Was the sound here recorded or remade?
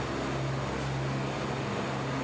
recorded